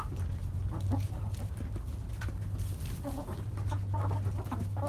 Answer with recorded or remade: recorded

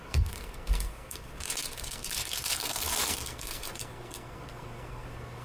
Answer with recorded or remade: remade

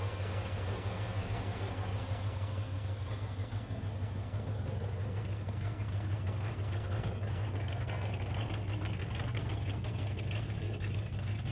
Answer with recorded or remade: remade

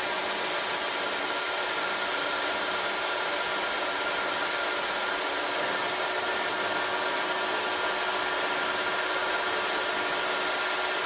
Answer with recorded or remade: recorded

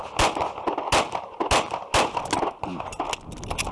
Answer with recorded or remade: recorded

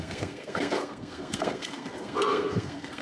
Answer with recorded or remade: remade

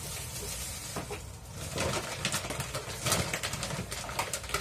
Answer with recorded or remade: recorded